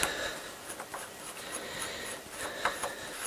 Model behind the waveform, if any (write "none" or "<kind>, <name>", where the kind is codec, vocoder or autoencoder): none